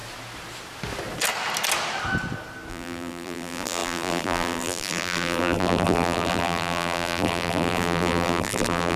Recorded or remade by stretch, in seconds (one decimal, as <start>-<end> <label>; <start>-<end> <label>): 0.0-2.7 recorded; 2.7-9.0 remade